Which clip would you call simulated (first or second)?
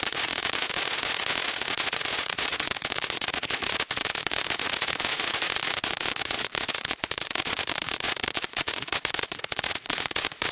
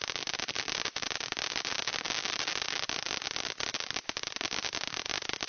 first